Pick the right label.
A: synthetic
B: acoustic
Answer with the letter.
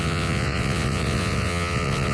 A